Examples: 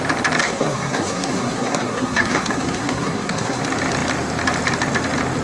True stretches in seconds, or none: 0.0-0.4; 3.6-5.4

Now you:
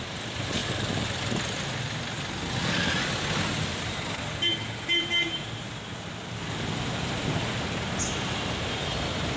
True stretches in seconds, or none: 0.0-9.4

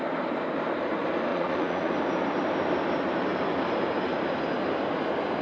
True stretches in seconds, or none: 0.0-1.3; 1.9-5.4

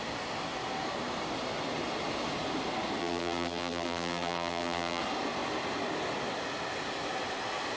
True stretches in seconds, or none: 0.0-3.0; 5.0-7.8